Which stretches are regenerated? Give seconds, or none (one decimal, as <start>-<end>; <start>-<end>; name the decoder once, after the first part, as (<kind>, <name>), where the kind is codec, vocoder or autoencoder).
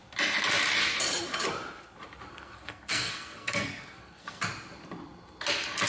2.3-4.4 (codec, SNAC)